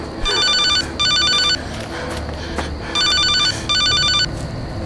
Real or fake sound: real